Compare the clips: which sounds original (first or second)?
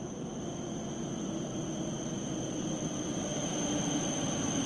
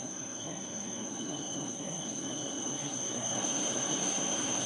first